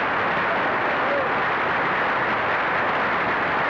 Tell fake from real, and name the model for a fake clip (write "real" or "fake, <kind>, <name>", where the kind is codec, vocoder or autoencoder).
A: real